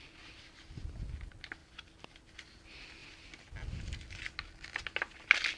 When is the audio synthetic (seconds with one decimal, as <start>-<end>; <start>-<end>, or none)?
1.6-2.3